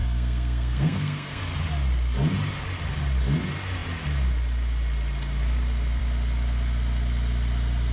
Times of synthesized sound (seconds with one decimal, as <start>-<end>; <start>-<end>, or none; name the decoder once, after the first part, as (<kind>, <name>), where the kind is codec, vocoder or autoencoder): 0.0-1.4 (codec, SNAC)